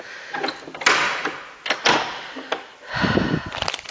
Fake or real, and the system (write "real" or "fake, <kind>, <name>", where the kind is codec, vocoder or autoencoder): real